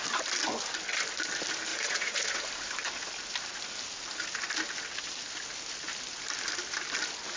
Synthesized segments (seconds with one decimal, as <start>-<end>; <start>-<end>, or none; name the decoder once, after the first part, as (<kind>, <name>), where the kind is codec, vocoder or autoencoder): 1.7-2.4 (vocoder, Vocos)